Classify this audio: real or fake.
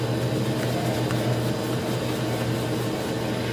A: real